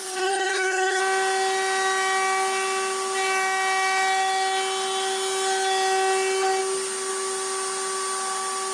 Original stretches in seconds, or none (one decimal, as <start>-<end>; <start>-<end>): 1.0-8.7